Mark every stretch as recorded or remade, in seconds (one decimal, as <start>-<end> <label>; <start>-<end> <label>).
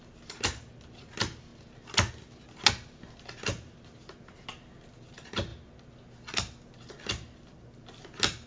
0.0-8.5 recorded